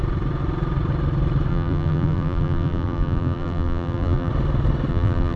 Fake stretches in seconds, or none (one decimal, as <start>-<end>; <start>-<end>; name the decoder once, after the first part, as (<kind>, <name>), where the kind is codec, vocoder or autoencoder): 1.5-4.3 (vocoder, BigVGAN v2); 4.9-5.4